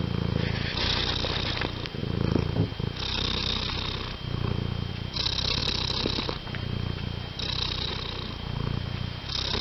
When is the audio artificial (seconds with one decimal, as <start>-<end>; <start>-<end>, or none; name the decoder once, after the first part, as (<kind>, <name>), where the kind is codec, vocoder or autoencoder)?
5.6-7.9 (vocoder, BigVGAN v2)